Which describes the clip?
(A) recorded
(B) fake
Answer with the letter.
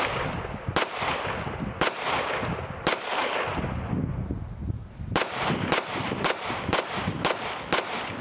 A